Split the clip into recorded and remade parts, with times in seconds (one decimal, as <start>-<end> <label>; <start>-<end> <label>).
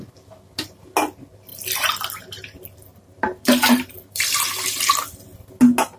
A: 0.0-1.5 recorded; 1.5-2.2 remade; 2.2-2.9 recorded; 2.9-4.4 remade; 4.4-6.0 recorded